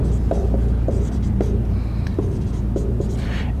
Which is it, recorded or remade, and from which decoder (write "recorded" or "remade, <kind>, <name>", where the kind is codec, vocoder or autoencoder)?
remade, vocoder, BigVGAN v2